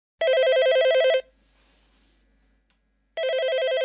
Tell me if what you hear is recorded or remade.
recorded